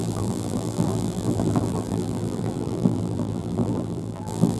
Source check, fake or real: fake